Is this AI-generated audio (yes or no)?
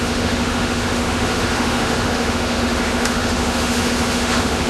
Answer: yes